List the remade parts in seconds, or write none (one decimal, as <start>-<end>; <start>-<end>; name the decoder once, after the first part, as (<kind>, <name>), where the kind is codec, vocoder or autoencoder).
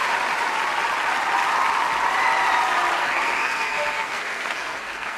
3.0-5.2 (codec, SNAC)